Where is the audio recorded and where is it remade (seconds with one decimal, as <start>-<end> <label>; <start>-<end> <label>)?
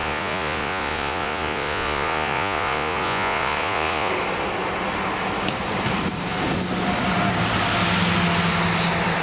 0.0-4.1 remade; 4.1-9.2 recorded